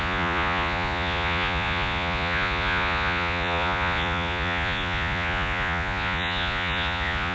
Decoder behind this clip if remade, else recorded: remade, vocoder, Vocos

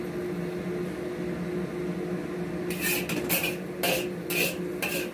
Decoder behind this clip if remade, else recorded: recorded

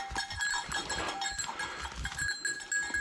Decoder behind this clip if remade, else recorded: recorded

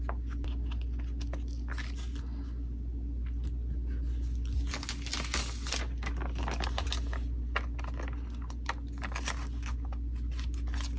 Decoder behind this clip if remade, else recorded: recorded